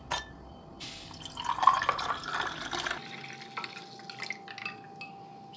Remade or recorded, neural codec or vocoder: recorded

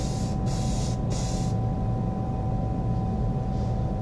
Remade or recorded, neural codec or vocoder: recorded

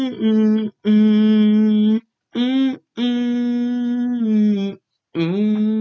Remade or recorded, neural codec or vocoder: recorded